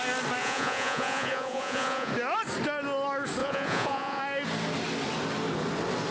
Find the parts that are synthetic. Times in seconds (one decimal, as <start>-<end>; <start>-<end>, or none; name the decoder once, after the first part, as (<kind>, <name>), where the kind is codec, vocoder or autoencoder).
0.4-2.1 (vocoder, Vocos); 3.4-4.2